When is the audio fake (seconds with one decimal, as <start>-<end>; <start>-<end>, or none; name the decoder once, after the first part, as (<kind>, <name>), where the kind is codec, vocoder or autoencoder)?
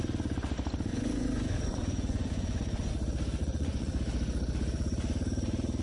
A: 0.9-2.9 (vocoder, Vocos); 3.4-4.0